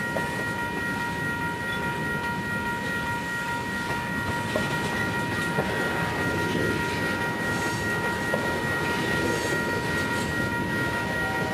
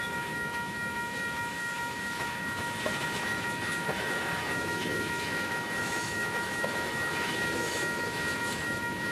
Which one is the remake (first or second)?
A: second